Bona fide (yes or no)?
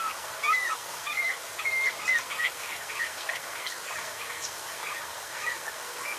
no